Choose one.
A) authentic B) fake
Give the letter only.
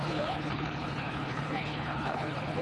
B